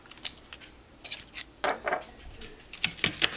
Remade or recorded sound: recorded